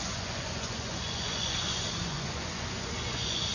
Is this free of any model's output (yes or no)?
no